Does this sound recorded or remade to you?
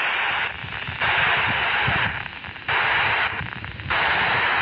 recorded